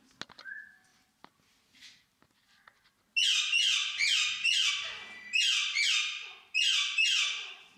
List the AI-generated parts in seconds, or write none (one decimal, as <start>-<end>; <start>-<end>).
none